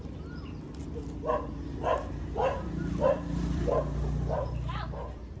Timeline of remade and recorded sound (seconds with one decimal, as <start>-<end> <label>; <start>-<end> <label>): 0.0-1.9 recorded; 1.9-5.4 remade